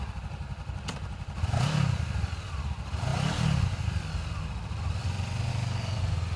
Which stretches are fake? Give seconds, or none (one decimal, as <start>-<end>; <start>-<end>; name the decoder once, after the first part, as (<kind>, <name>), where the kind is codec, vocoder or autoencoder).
5.5-6.0 (codec, DAC)

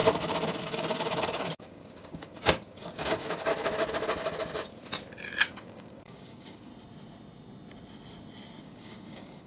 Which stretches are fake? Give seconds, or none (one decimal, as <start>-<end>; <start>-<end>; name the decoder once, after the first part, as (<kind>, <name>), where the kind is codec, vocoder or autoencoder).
0.6-3.5 (codec, DAC); 5.4-6.7; 8.6-9.5

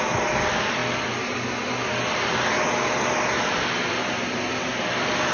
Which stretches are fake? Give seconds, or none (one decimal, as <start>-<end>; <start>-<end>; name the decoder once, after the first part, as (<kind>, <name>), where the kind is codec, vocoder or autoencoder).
none

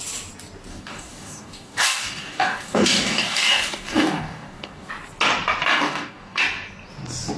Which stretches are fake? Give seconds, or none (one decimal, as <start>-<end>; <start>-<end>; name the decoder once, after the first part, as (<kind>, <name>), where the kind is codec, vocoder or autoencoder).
0.7-4.9 (codec, DAC); 5.7-6.4